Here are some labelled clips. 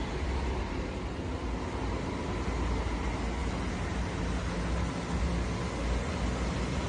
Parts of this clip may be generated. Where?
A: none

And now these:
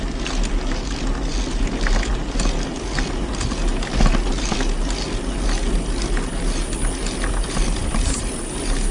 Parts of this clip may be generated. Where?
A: none